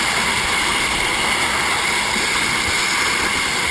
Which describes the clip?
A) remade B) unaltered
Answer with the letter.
B